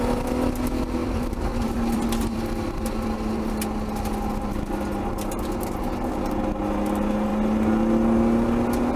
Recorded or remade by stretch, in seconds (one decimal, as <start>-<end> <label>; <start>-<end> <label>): 0.0-1.0 recorded; 1.0-3.4 remade; 3.4-9.0 recorded